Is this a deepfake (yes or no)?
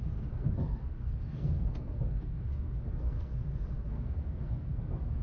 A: yes